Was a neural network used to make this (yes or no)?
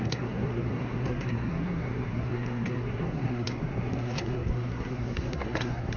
yes